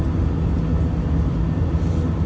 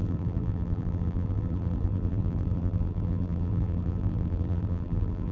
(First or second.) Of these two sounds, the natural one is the first